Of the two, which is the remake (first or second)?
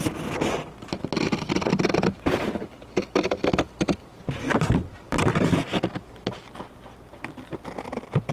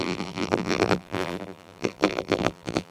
second